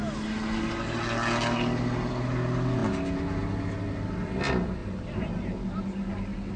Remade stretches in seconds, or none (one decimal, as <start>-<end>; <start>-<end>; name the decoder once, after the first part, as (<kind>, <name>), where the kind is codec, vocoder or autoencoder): 4.8-5.8 (vocoder, BigVGAN v2)